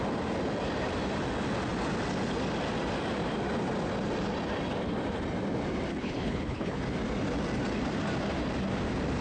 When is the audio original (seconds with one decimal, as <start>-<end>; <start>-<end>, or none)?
0.0-5.9; 6.8-9.2